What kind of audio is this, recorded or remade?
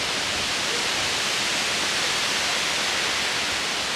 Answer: recorded